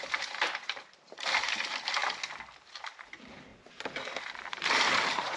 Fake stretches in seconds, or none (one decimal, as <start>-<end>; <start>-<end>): 0.0-2.0; 2.6-3.5; 4.3-5.4

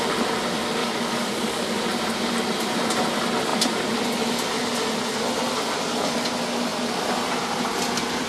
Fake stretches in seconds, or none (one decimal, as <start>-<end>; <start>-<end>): 0.8-1.8

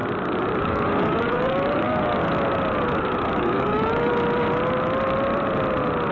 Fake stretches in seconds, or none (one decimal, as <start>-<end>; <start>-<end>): 0.6-2.2; 3.3-4.1

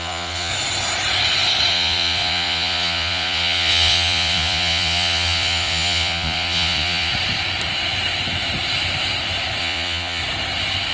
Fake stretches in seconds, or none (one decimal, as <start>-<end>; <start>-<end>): 0.0-0.5; 1.7-7.1; 9.6-10.2

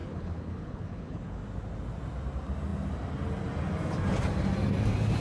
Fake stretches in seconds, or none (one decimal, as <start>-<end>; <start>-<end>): 0.0-1.4